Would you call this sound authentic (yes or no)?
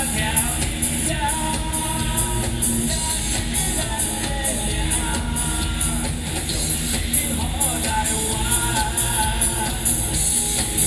yes